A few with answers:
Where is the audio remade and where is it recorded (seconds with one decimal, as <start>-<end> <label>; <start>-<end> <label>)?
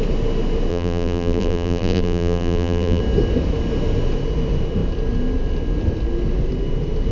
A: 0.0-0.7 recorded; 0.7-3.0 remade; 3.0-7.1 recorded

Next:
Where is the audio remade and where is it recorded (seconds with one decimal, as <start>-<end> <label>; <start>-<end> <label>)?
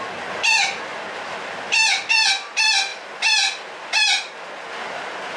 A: 0.0-5.4 recorded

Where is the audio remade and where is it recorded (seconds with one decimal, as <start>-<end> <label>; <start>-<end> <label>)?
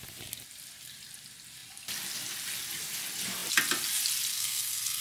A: 0.0-4.3 recorded; 4.3-5.0 remade